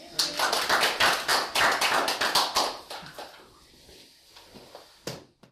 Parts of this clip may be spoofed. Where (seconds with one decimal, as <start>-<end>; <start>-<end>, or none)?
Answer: none